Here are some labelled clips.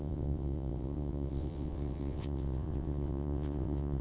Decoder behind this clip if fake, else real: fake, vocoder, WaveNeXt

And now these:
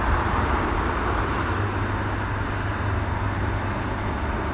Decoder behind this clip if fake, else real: real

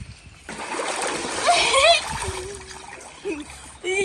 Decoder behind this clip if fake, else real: real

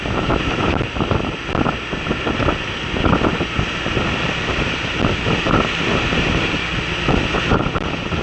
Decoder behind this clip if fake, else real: real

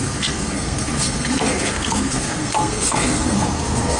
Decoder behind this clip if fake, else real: fake, codec, SNAC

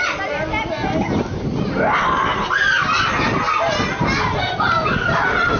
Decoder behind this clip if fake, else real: real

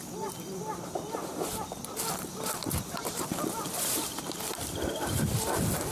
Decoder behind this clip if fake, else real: fake, vocoder, BigVGAN v2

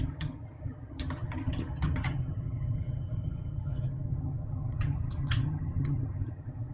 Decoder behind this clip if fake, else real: fake, vocoder, HiFi-GAN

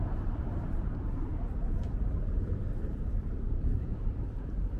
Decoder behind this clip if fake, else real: fake, vocoder, BigVGAN v2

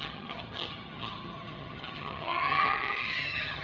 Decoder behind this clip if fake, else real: fake, vocoder, HiFi-GAN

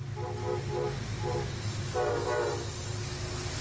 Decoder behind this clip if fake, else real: real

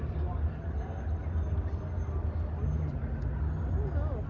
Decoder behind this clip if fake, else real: real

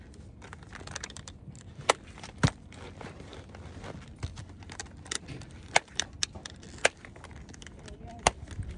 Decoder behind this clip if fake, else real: fake, vocoder, BigVGAN v2